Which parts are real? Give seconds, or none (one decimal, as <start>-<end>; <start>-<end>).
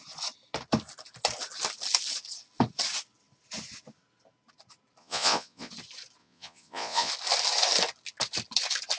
0.0-5.0; 5.7-6.2; 7.1-9.0